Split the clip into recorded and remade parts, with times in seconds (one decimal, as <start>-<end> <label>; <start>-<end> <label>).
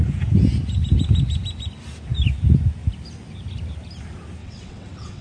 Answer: 0.0-4.4 recorded; 4.4-5.2 remade